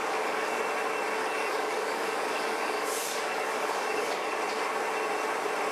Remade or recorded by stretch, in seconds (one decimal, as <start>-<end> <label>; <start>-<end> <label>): 0.0-0.6 remade; 0.6-1.2 recorded; 1.2-4.4 remade; 4.4-5.7 recorded